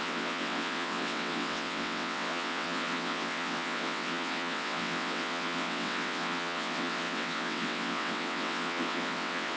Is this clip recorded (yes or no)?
no